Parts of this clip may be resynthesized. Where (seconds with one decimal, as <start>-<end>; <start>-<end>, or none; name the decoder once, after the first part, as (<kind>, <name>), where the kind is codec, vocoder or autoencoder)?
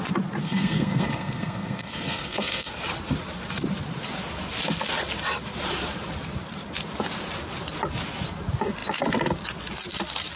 0.4-2.7 (codec, SNAC)